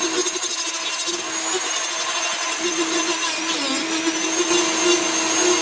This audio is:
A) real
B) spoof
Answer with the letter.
A